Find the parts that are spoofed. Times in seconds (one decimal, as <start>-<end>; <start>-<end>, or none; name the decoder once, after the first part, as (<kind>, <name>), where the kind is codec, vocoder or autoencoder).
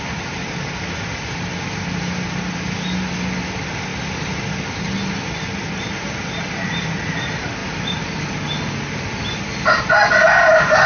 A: none